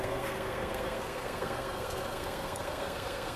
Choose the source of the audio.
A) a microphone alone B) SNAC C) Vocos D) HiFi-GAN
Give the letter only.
B